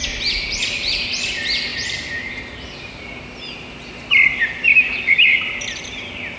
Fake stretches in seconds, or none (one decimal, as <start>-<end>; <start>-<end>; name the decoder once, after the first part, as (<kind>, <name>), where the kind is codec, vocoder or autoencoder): 1.7-2.4 (vocoder, BigVGAN v2); 4.7-6.0